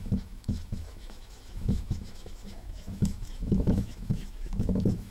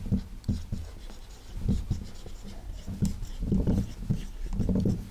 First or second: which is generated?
first